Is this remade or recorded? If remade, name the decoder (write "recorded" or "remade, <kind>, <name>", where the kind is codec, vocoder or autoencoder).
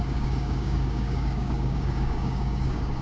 remade, codec, DAC